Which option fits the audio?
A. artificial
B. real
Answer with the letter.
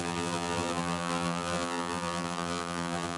A